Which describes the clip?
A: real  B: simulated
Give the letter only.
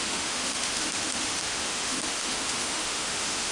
B